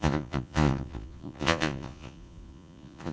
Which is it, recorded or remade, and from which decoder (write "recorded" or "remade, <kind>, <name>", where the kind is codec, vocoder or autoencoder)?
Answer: remade, vocoder, Vocos